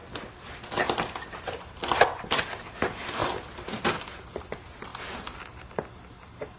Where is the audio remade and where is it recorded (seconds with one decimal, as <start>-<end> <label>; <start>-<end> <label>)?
0.0-6.6 recorded